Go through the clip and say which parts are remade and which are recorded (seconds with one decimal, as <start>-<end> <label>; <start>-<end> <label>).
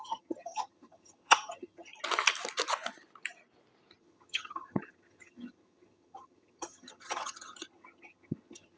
0.0-1.9 remade; 1.9-4.0 recorded; 4.0-8.8 remade